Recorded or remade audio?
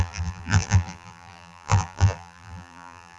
remade